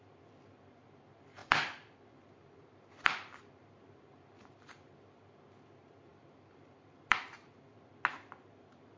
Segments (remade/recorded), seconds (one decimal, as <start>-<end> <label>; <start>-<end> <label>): 0.0-1.4 recorded; 1.4-3.5 remade; 3.5-6.1 recorded; 6.1-7.8 remade; 7.8-9.0 recorded